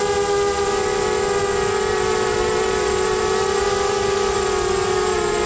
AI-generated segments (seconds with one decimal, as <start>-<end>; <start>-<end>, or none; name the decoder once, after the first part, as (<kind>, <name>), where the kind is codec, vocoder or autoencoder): 1.9-5.5 (vocoder, BigVGAN v2)